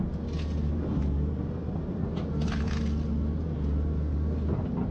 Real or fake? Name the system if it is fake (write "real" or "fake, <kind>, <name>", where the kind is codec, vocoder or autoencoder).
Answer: real